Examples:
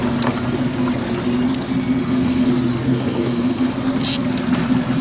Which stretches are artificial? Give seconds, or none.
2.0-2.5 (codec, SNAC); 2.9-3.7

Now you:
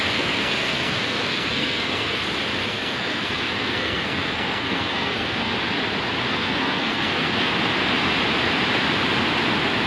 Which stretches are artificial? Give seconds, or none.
0.0-2.2 (codec, SNAC); 2.6-5.5; 6.3-7.5

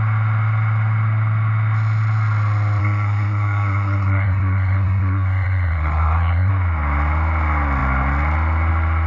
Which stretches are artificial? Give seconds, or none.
2.8-6.5 (codec, SNAC)

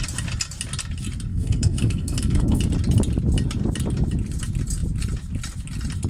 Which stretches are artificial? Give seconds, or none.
1.3-2.6 (codec, SNAC)